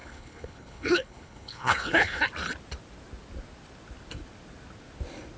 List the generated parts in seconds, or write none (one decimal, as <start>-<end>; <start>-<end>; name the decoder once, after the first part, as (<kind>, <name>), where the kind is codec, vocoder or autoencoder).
0.0-2.2 (codec, HILCodec)

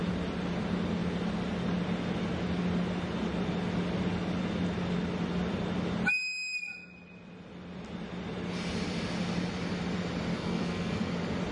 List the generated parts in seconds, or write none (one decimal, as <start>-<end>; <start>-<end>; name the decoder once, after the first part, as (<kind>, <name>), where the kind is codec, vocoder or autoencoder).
10.3-11.1 (codec, SNAC)

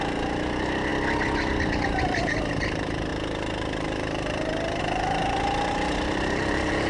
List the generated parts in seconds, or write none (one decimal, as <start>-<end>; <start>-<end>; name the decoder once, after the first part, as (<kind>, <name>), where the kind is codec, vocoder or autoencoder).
0.0-0.9 (vocoder, BigVGAN v2); 2.0-6.9